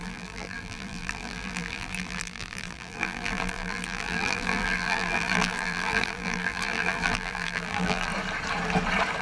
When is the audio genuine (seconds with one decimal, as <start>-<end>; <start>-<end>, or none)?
8.1-9.2